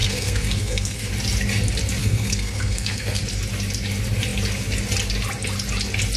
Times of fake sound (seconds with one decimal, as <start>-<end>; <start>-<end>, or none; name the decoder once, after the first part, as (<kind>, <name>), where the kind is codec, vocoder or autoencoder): 0.0-1.1 (codec, SNAC); 2.0-3.2